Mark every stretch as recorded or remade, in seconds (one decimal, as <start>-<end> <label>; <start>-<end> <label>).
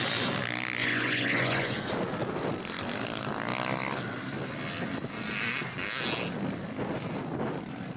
0.0-0.8 recorded; 0.8-1.9 remade; 1.9-8.0 recorded